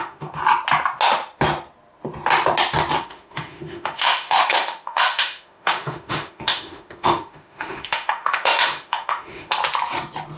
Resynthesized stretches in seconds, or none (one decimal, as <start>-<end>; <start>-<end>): 0.0-0.4; 3.0-9.6